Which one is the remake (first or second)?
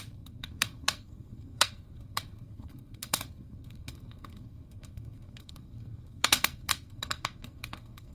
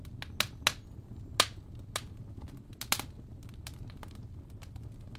first